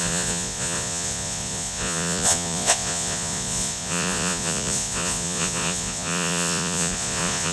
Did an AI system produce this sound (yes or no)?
yes